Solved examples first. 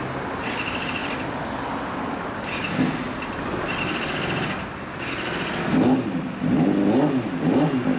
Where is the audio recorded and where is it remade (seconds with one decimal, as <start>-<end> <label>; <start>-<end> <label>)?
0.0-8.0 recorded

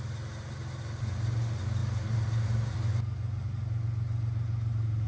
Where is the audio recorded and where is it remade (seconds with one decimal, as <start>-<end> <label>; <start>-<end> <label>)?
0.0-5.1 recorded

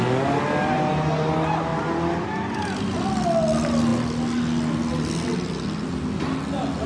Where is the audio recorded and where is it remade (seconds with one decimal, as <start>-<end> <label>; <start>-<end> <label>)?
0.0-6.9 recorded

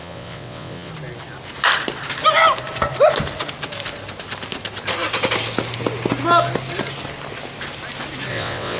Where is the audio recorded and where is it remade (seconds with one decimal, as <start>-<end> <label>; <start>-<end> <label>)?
0.0-0.9 remade; 0.9-8.3 recorded; 8.3-8.8 remade

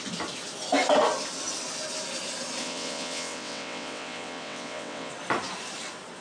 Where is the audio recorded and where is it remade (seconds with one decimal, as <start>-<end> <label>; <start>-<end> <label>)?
0.0-2.6 recorded; 2.6-5.1 remade; 5.1-6.2 recorded

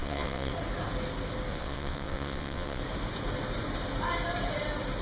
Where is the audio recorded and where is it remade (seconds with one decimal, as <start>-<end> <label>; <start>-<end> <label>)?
0.0-0.5 remade; 0.5-1.5 recorded; 1.5-2.8 remade; 2.8-5.0 recorded

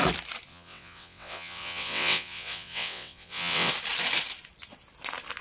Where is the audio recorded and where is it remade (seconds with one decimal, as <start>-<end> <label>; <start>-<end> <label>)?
0.0-0.5 recorded; 0.5-3.7 remade; 3.7-5.4 recorded

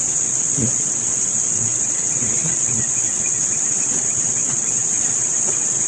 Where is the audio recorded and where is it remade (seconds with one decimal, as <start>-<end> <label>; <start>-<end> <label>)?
0.0-5.9 remade